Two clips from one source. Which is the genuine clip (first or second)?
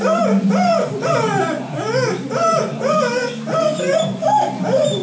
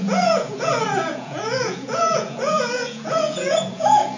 first